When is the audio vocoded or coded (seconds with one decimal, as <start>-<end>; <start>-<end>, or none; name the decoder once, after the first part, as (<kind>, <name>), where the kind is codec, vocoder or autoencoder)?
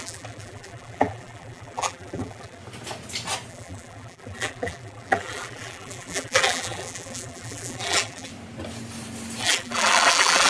0.0-2.6 (vocoder, BigVGAN v2); 3.5-8.3; 9.4-10.5